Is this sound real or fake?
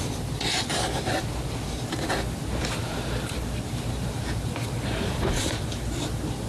fake